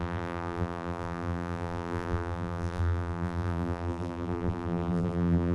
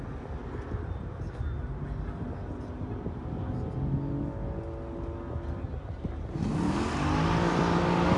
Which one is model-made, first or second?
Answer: first